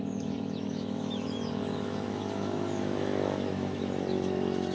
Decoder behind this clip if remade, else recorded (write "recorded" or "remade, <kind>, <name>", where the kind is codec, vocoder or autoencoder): remade, autoencoder, DAC-VAE